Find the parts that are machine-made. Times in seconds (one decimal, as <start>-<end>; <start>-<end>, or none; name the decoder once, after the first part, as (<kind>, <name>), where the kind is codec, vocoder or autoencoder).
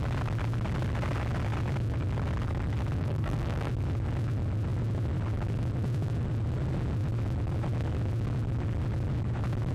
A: 3.0-3.7 (codec, SNAC)